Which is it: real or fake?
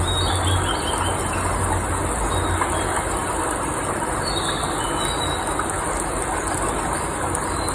real